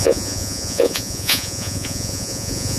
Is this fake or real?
fake